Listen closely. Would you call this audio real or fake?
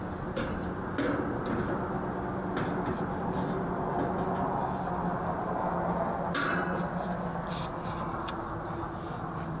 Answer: real